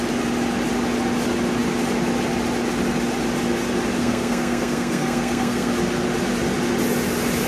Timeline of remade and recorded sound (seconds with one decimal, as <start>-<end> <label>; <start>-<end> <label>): 0.0-4.0 recorded; 4.0-5.7 remade; 5.7-7.5 recorded